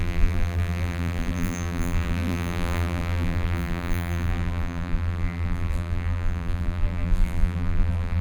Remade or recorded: remade